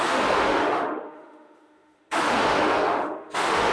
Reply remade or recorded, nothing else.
remade